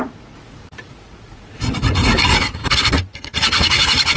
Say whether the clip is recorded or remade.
remade